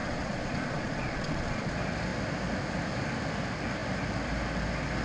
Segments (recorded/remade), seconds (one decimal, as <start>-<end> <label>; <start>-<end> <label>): 0.0-1.7 remade; 1.7-5.0 recorded